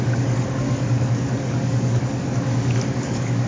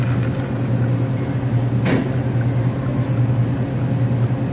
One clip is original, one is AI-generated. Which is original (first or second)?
second